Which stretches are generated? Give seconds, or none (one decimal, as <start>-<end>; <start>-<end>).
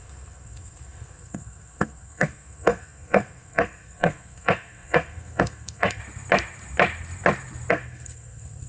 0.0-6.0; 7.7-8.7